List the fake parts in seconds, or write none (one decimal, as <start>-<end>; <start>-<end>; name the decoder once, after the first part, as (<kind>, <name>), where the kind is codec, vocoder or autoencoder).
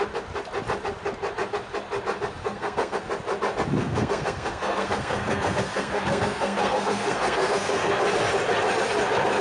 2.4-3.0 (codec, SNAC); 3.8-7.9